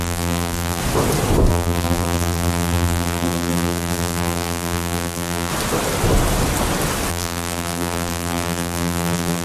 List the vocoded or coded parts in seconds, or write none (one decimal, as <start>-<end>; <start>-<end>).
0.0-0.8; 1.5-5.5; 7.1-9.4